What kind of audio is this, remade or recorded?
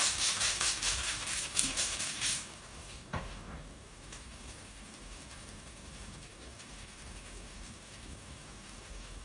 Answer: remade